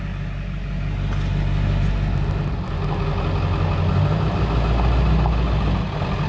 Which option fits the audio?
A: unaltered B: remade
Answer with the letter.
A